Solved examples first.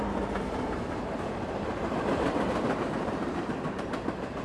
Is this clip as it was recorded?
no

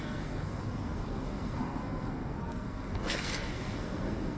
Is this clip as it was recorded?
no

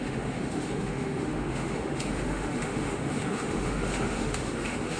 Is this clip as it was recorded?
no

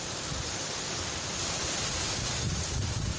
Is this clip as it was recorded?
yes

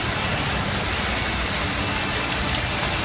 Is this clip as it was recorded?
yes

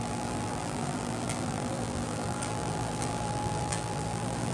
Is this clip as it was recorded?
no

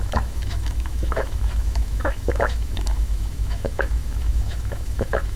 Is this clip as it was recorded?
no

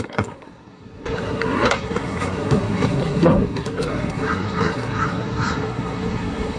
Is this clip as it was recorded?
no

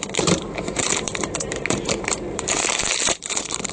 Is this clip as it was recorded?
no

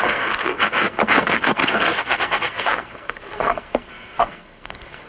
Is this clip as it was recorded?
no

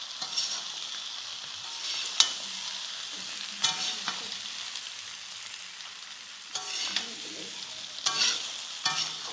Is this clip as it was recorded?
yes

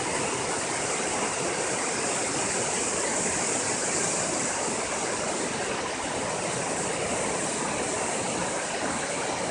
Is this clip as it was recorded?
yes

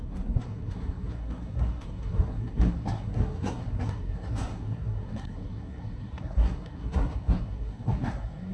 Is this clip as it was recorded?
no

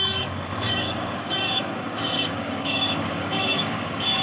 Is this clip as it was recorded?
no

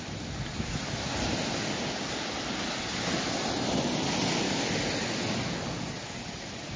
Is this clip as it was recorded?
yes